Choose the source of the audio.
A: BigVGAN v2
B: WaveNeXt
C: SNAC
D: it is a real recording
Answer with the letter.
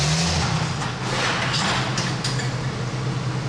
D